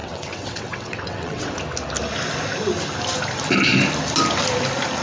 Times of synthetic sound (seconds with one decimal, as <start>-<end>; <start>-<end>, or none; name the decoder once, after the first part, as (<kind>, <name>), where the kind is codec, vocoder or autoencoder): 0.0-1.6 (vocoder, WaveNeXt)